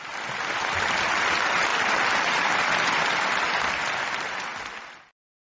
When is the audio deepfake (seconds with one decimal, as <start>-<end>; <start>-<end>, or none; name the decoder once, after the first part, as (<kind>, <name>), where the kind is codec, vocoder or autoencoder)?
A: none